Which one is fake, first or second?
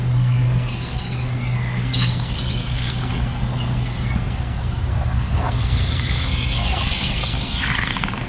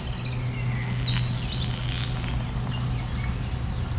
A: first